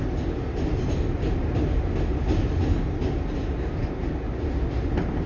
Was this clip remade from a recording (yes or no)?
no